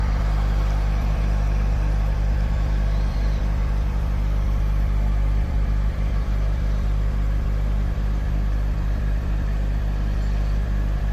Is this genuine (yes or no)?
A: no